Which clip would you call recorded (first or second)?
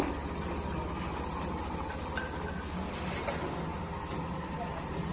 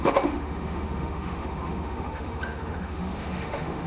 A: first